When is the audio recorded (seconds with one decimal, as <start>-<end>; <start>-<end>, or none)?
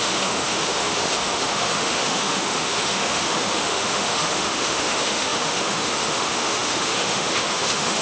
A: none